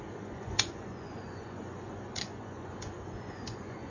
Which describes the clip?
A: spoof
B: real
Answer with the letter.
A